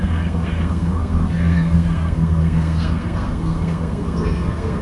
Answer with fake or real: fake